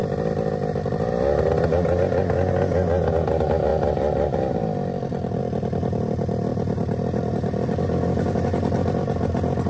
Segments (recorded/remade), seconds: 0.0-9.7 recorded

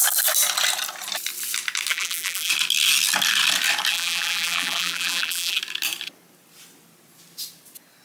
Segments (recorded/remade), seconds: 0.0-1.9 recorded; 1.9-2.5 remade; 2.5-3.9 recorded; 3.9-5.6 remade; 5.6-8.0 recorded

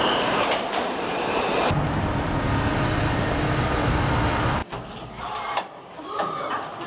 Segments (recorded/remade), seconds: 0.0-1.5 remade; 1.5-3.5 recorded; 3.5-4.6 remade; 4.6-5.2 recorded; 5.2-6.9 remade

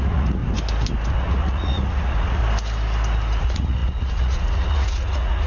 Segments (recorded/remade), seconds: 0.0-0.4 remade; 0.4-1.1 recorded; 1.1-2.4 remade; 2.4-3.4 recorded; 3.4-5.5 remade

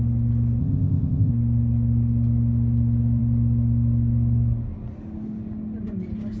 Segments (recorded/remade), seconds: 0.0-0.6 recorded; 0.6-1.3 remade; 1.3-6.4 recorded

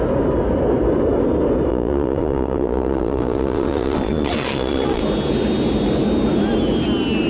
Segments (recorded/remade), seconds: 0.0-1.7 recorded; 1.7-5.0 remade; 5.0-7.3 recorded

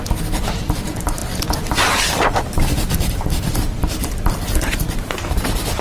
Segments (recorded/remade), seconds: 0.0-5.8 remade